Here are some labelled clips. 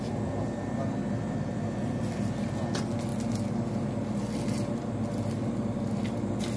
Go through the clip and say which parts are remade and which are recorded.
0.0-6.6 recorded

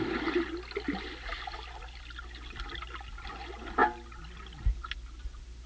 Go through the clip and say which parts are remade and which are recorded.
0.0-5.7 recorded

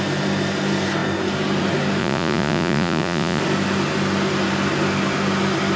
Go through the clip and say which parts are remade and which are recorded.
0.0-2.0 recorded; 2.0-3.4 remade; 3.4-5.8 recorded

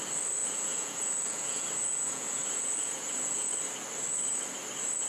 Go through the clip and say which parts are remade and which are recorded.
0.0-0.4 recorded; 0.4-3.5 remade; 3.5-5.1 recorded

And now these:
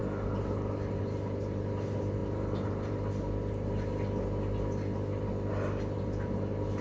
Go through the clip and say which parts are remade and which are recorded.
0.0-6.8 recorded

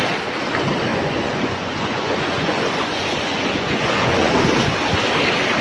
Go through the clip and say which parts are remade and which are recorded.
0.0-0.9 recorded; 0.9-4.3 remade; 4.3-5.6 recorded